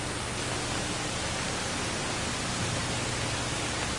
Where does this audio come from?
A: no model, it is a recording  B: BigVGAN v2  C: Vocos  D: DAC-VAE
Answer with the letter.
A